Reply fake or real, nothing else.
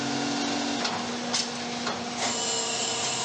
real